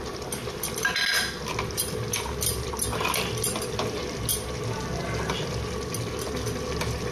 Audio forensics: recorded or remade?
recorded